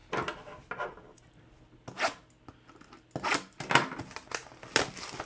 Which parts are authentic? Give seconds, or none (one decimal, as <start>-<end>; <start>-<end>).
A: 0.0-5.3